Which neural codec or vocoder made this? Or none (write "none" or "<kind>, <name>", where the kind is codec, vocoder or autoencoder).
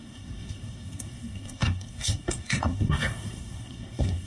codec, SNAC